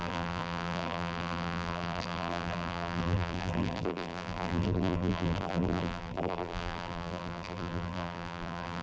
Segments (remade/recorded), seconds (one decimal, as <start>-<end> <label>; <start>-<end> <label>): 0.0-8.8 remade

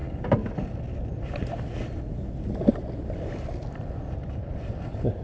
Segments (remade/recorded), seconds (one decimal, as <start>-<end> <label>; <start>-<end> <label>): 0.0-5.2 recorded

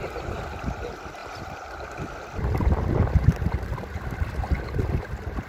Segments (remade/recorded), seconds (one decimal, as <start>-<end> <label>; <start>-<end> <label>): 0.0-5.5 recorded

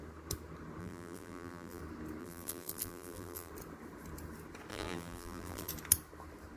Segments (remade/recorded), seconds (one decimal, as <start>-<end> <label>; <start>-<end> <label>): 0.0-0.8 recorded; 0.8-1.8 remade; 1.8-2.2 recorded; 2.2-3.5 remade; 3.5-4.7 recorded; 4.7-5.7 remade; 5.7-6.6 recorded

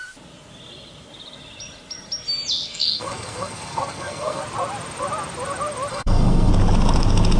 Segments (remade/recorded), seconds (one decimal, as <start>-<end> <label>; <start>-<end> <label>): 0.0-2.7 recorded; 2.7-4.4 remade; 4.4-5.9 recorded; 5.9-6.5 remade; 6.5-7.4 recorded